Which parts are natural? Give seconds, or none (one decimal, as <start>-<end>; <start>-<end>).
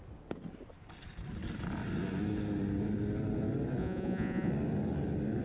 0.0-3.8; 4.5-5.4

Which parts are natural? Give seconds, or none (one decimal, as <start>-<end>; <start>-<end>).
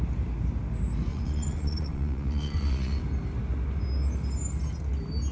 0.0-1.1; 3.0-5.3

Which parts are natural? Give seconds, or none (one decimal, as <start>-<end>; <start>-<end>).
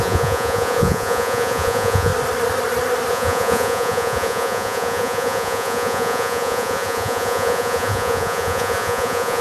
2.1-3.1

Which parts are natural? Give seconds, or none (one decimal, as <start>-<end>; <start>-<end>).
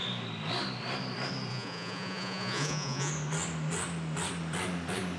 0.0-1.5; 3.1-5.2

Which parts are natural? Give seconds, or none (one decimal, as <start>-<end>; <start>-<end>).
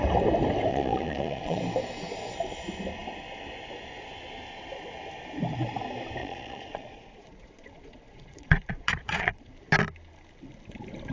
0.0-0.7; 1.6-6.2; 9.5-11.1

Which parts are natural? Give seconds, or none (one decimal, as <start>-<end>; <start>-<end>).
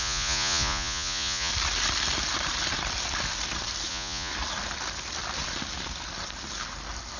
1.5-3.9; 4.3-7.2